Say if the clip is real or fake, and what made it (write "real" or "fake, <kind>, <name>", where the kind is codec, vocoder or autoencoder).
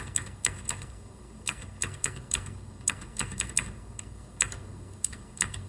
fake, codec, SNAC